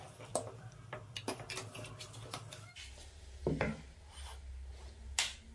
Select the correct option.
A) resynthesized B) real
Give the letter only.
B